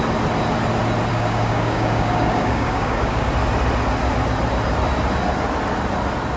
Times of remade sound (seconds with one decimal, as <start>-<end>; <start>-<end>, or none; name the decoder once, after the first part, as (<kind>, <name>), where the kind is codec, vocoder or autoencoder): 1.1-3.3 (codec, DAC)